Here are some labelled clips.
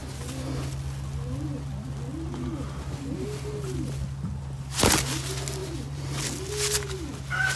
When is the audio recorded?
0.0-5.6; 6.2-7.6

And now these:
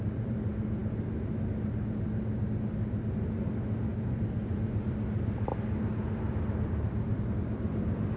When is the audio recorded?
0.8-3.8; 5.5-6.7

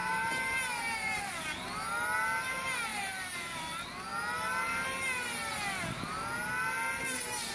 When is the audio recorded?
1.3-2.9; 3.6-7.5

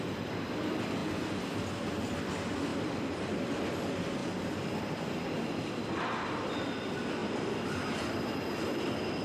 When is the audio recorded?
0.0-2.7; 3.5-4.2; 6.5-9.2

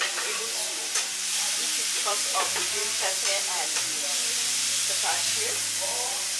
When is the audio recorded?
none

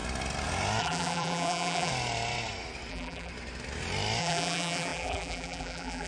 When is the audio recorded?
0.0-0.8; 1.9-2.9; 3.3-4.2